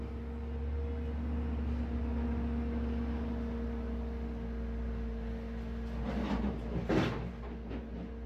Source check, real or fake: real